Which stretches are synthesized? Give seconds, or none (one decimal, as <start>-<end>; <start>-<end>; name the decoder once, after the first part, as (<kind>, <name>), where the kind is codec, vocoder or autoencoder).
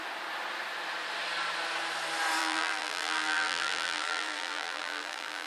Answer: 2.4-5.5 (vocoder, BigVGAN v2)